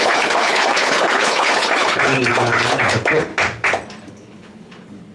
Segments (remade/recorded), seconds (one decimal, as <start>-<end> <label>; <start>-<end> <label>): 0.0-3.3 remade; 3.3-4.1 recorded; 4.1-5.1 remade